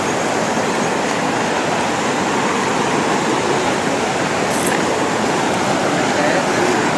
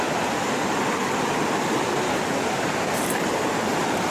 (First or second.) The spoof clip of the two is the second